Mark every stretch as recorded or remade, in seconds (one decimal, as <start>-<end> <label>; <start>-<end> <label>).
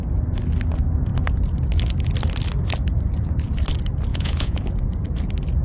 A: 0.0-4.1 recorded; 4.1-4.6 remade; 4.6-5.6 recorded